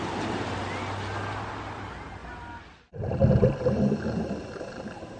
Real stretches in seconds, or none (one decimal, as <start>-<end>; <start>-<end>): 0.0-5.2